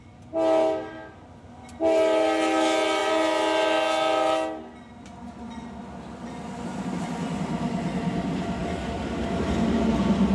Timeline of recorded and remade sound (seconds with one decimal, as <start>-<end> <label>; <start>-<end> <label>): 0.0-10.3 recorded